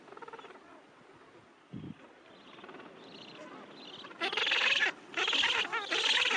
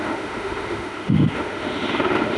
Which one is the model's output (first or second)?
second